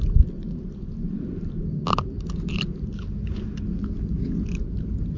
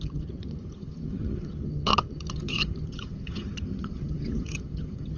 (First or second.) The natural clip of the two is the first